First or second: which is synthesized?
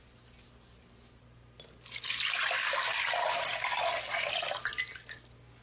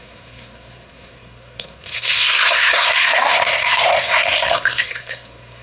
second